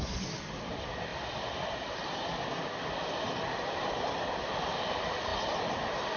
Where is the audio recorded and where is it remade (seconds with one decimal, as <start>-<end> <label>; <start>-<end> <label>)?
0.0-1.1 recorded; 1.1-4.8 remade; 4.8-6.2 recorded